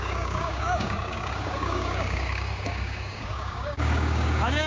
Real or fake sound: fake